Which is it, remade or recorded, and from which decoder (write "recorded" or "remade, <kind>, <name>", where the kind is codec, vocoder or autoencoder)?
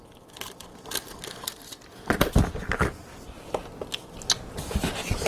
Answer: recorded